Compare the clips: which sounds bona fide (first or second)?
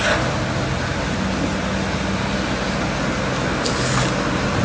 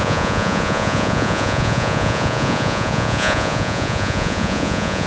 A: first